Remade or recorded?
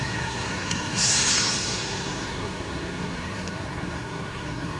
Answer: remade